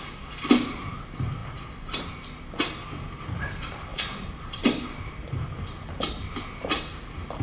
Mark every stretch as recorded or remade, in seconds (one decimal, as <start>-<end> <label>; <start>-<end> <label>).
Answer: 0.0-3.9 recorded; 3.9-5.0 remade; 5.0-7.4 recorded